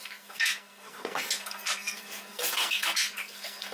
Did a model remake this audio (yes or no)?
yes